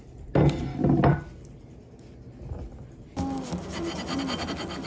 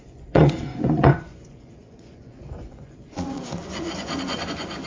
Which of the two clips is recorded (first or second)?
first